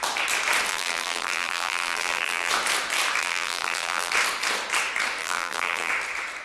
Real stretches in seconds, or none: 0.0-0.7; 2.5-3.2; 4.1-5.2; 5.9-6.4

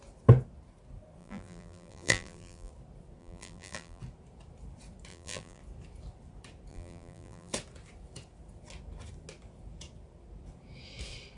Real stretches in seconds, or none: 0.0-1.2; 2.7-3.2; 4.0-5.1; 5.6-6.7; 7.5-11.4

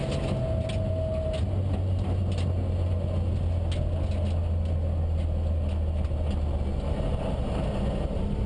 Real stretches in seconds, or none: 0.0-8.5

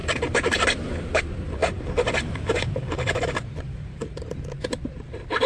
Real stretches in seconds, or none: none

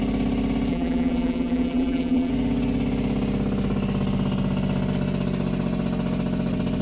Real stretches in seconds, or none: 0.0-0.7; 2.3-6.8